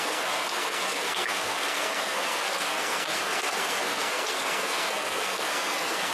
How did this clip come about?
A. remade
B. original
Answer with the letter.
A